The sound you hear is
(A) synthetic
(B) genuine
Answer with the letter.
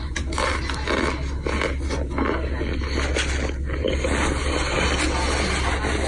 B